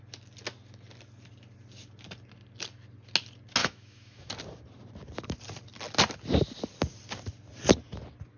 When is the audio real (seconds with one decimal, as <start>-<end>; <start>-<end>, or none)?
0.0-3.6; 4.3-8.4